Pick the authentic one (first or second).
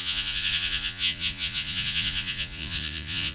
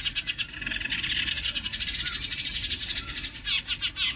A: second